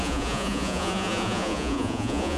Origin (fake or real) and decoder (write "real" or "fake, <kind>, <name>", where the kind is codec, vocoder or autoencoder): fake, vocoder, Vocos